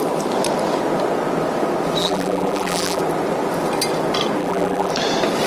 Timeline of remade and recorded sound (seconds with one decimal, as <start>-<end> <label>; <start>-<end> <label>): 0.0-2.0 recorded; 2.0-3.0 remade; 3.0-4.4 recorded; 4.4-4.9 remade; 4.9-5.5 recorded